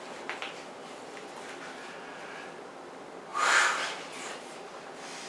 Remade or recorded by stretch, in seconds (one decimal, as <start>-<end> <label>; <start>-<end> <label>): 0.0-0.8 recorded; 0.8-1.4 remade; 1.4-3.3 recorded; 3.3-4.3 remade; 4.3-5.3 recorded